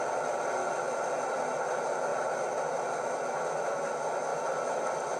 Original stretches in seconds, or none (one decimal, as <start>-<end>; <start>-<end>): 0.0-5.2